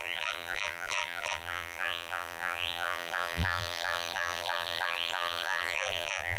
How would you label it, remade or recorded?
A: remade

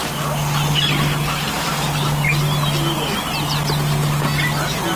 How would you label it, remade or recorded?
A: recorded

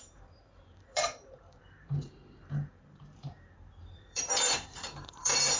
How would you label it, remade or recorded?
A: remade